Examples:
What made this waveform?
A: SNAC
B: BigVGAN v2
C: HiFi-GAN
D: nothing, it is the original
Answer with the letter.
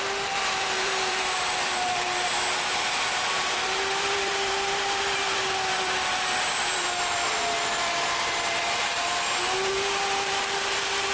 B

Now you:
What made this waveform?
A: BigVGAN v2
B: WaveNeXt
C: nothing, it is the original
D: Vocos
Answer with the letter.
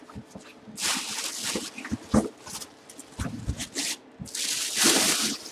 C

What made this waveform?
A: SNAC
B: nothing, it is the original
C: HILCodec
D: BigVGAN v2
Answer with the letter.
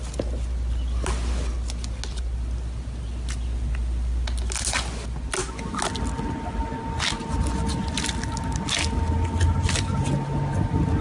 B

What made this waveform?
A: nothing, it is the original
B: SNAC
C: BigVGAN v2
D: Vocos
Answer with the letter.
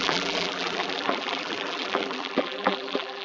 C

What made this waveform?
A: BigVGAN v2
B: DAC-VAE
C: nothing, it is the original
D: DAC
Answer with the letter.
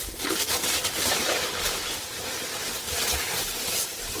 A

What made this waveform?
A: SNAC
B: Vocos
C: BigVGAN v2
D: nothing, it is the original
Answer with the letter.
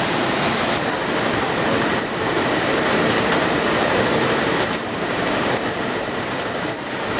C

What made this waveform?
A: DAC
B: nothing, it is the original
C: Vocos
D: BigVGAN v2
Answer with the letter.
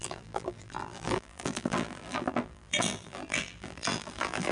D